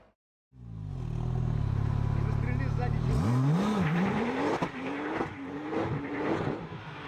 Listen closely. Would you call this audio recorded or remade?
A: recorded